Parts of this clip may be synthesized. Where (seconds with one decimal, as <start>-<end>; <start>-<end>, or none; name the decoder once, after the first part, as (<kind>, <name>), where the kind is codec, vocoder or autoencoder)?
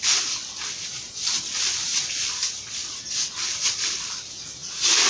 none